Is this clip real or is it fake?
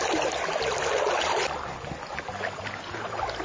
real